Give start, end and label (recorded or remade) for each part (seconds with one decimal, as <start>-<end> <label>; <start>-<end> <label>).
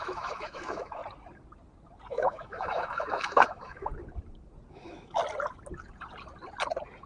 0.0-1.0 remade; 1.0-2.1 recorded; 2.1-3.9 remade; 3.9-4.7 recorded; 4.7-5.2 remade; 5.2-7.1 recorded